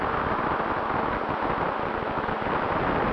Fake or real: real